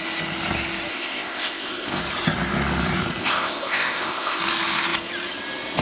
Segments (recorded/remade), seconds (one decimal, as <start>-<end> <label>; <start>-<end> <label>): 0.0-0.9 recorded; 0.9-2.0 remade; 2.0-3.2 recorded; 3.2-4.4 remade; 4.4-5.8 recorded